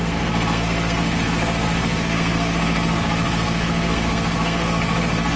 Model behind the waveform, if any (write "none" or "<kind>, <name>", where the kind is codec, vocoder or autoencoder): codec, SNAC